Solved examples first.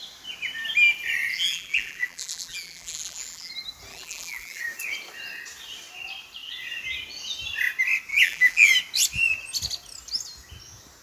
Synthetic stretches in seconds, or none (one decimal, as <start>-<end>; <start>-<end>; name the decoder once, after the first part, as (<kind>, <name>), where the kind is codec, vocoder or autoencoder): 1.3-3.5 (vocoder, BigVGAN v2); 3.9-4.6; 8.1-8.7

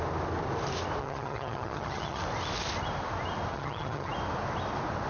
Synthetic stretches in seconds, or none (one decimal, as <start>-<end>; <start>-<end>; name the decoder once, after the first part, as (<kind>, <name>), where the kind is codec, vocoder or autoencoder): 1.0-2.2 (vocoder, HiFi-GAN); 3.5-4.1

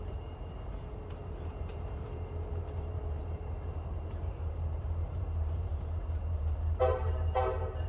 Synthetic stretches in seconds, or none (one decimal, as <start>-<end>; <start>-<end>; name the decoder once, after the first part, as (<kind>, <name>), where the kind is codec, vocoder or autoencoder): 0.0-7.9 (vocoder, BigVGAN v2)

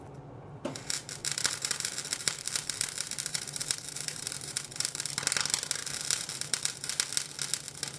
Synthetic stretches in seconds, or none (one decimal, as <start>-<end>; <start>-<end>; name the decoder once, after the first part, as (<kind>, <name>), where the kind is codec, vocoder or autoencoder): 1.2-5.1 (vocoder, BigVGAN v2); 5.8-6.9

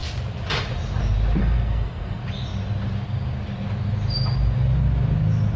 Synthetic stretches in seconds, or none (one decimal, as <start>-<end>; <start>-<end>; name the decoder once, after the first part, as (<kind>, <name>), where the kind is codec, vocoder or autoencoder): 1.4-2.2 (codec, SNAC)

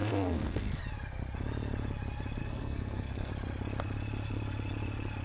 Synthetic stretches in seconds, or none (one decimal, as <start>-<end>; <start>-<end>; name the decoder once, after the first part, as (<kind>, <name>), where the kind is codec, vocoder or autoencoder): 0.0-0.8 (codec, SNAC); 2.4-3.3

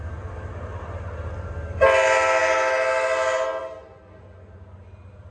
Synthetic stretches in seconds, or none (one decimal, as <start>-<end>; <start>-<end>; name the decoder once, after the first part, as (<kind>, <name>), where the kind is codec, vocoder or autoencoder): none

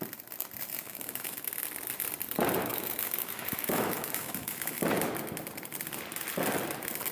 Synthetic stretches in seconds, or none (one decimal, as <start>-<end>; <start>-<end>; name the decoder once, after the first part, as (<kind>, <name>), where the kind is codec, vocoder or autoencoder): 0.7-1.5 (autoencoder, DAC-VAE); 2.6-4.8